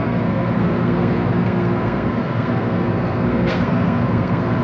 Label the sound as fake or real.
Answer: fake